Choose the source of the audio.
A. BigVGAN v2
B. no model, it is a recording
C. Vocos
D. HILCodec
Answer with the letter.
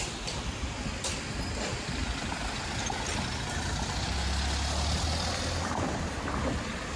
B